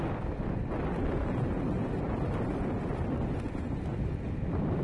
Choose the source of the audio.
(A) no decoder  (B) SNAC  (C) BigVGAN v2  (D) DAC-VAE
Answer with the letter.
A